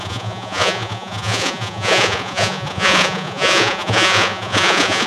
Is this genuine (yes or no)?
no